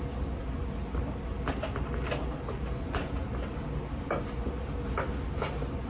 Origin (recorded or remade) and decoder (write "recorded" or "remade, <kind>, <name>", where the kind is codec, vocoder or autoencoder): recorded